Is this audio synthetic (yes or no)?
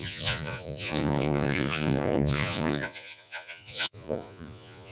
yes